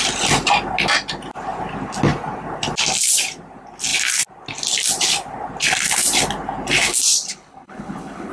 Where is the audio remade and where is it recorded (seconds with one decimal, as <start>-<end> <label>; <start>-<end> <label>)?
0.0-7.1 recorded; 7.1-8.3 remade